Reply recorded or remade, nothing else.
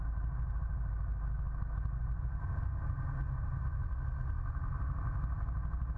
recorded